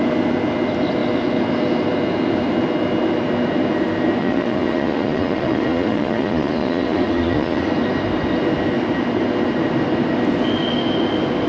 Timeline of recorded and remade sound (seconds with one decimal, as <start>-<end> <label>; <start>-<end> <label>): 0.0-4.2 recorded; 4.2-7.7 remade; 7.7-11.5 recorded